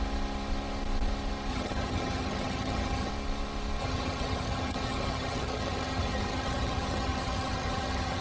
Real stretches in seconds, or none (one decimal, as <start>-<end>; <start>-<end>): 0.0-1.5; 3.1-3.8